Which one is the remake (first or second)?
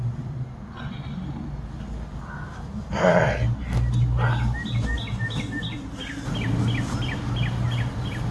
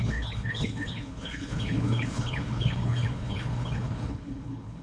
second